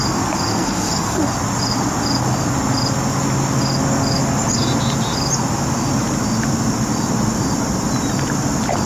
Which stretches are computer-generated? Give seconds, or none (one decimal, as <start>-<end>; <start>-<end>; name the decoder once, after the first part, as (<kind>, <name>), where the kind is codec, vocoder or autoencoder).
0.5-1.3 (codec, SNAC)